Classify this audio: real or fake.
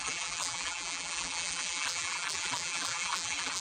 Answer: fake